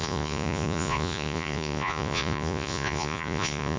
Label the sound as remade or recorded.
remade